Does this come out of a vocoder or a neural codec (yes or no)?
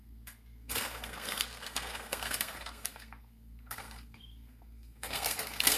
yes